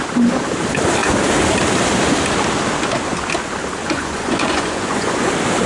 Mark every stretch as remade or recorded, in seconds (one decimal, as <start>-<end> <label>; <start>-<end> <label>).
0.0-3.8 recorded; 3.8-5.3 remade; 5.3-5.7 recorded